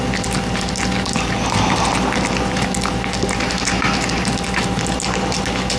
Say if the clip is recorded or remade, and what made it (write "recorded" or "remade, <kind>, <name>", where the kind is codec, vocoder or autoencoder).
recorded